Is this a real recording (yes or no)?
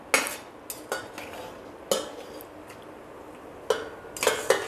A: yes